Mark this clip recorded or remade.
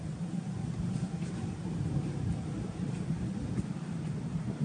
remade